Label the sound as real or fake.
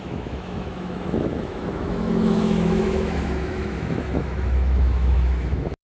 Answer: fake